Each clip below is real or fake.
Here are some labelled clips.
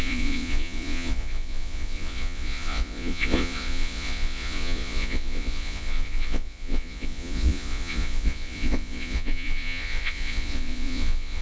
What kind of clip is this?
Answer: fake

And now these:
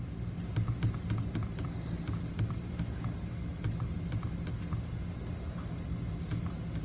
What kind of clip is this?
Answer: real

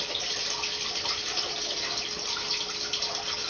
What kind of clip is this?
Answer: real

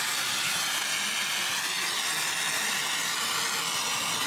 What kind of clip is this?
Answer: real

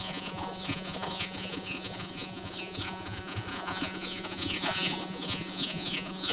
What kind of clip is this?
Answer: fake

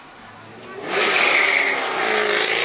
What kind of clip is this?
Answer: real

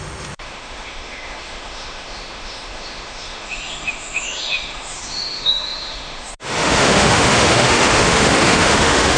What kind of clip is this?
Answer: fake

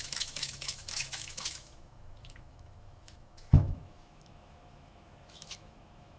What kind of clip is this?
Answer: fake